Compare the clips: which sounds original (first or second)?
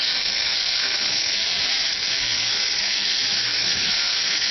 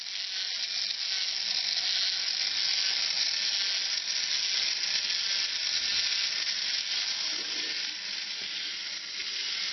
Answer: second